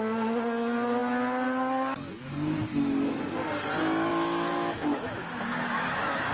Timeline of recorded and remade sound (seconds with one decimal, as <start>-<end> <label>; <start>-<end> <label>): 0.0-2.7 recorded; 2.7-3.2 remade; 3.2-4.1 recorded; 4.1-6.3 remade